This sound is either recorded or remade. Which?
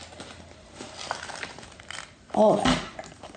recorded